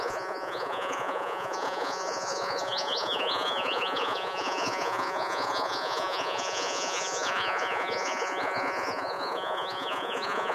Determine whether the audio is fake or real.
fake